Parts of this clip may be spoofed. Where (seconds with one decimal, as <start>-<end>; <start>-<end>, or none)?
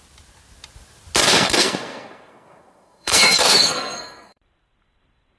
1.2-4.4